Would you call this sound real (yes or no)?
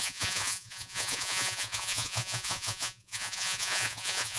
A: no